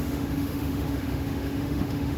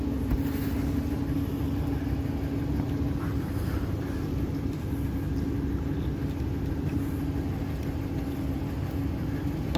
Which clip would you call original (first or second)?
second